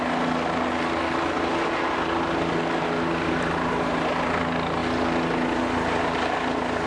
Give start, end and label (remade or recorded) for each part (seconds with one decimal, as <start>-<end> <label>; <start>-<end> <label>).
0.0-6.9 remade